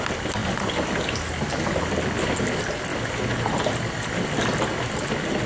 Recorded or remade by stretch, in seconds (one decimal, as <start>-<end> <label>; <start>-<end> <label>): 0.0-5.5 recorded